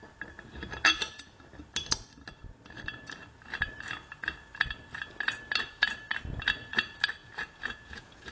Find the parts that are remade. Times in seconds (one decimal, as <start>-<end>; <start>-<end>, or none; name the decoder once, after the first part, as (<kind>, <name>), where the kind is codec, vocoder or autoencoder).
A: 7.2-8.3 (vocoder, Vocos)